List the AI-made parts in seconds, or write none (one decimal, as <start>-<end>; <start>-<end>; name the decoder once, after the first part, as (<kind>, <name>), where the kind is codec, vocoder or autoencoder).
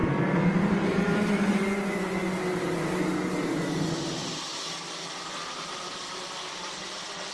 0.0-1.3 (vocoder, BigVGAN v2); 4.2-6.8